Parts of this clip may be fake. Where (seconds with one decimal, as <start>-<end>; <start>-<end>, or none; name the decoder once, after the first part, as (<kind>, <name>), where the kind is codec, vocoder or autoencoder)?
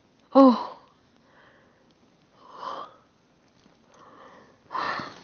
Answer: none